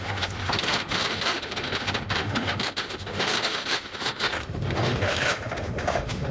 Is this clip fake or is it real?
fake